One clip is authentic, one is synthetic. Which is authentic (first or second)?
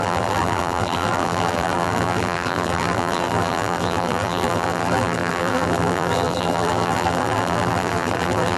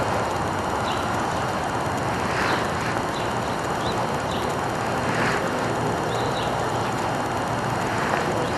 second